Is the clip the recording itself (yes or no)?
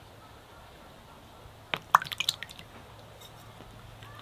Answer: yes